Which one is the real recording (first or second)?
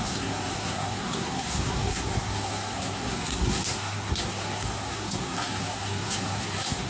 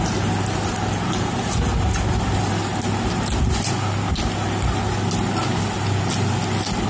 second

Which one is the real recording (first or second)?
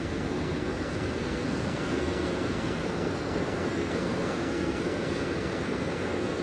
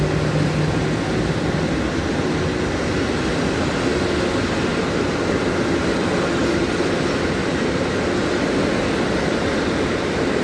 second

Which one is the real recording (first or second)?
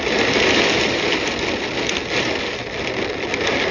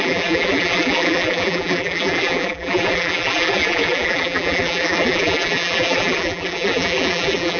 first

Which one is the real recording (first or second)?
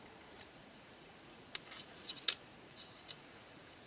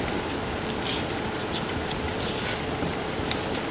second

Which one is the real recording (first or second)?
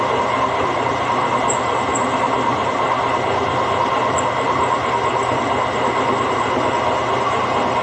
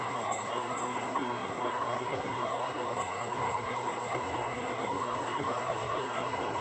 first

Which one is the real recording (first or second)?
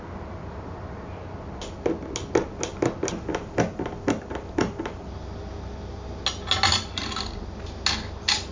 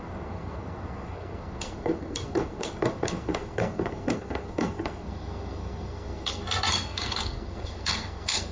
first